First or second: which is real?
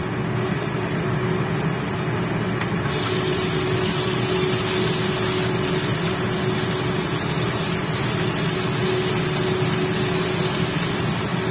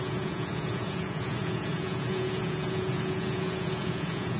first